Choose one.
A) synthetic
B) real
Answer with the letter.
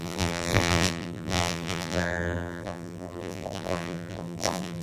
A